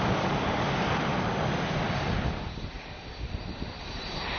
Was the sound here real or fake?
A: fake